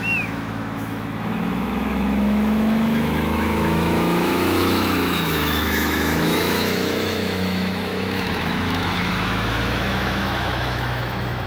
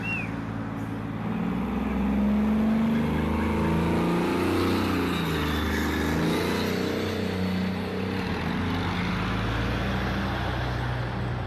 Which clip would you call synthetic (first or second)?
first